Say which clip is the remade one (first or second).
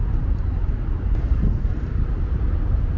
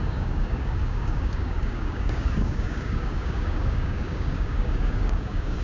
second